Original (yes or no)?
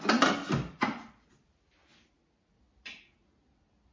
yes